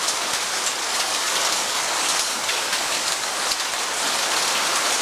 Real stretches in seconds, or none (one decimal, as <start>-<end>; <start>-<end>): 0.0-0.8; 3.5-5.0